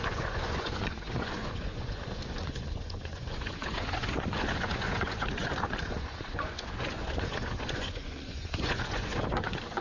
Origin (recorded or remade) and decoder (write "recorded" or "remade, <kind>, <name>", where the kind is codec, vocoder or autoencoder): remade, vocoder, Vocos